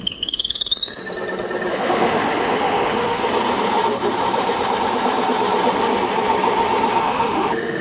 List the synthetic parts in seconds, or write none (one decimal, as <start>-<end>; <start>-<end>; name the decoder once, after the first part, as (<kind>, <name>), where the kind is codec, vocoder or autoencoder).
0.0-1.0 (autoencoder, DAC-VAE); 1.7-3.2; 7.0-7.8